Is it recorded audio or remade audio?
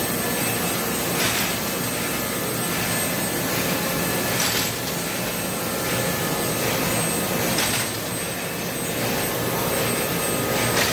recorded